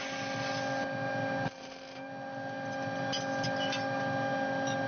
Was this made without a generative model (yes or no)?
yes